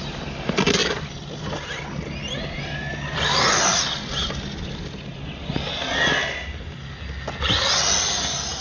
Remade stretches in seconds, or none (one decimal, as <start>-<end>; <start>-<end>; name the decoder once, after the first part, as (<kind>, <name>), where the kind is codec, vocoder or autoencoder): 2.9-3.8 (vocoder, BigVGAN v2)